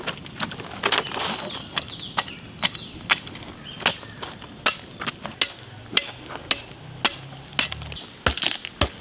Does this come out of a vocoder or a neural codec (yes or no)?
no